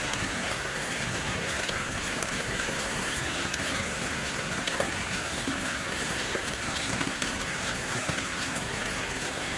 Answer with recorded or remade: remade